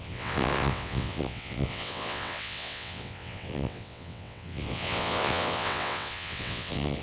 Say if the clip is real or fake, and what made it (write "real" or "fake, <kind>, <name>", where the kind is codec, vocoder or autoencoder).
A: fake, vocoder, WaveNeXt